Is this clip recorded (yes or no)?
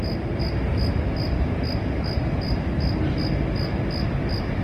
yes